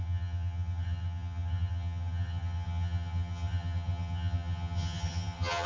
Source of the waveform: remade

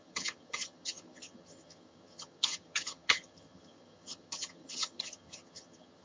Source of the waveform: remade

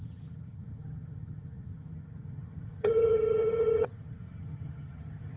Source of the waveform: remade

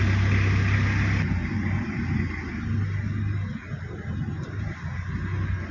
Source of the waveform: recorded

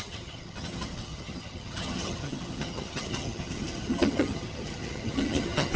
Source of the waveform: remade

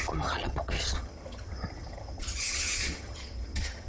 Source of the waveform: remade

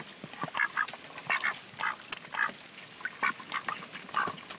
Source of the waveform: recorded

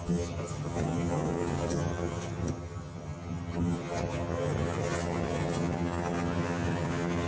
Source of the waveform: remade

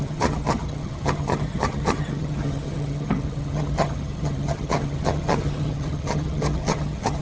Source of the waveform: remade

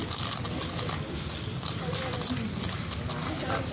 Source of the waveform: recorded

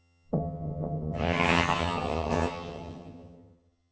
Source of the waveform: remade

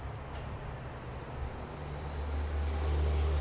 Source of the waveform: recorded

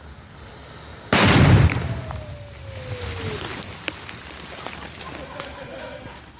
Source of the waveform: recorded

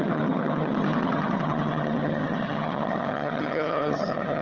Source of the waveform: remade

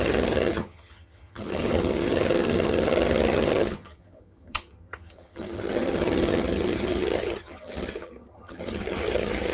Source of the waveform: remade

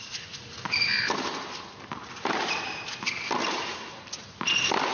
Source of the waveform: recorded